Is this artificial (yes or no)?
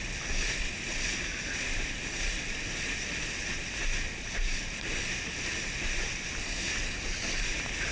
no